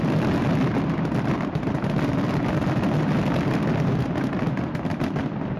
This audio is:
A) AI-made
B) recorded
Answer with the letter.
B